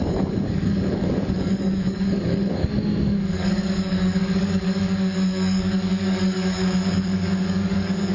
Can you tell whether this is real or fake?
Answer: fake